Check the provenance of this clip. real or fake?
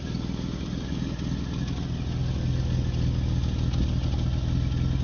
real